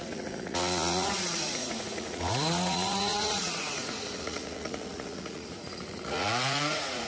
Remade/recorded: remade